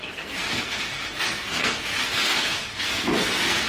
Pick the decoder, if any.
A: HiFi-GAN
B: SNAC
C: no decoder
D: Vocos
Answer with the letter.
B